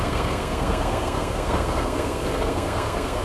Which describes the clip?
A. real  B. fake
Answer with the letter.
B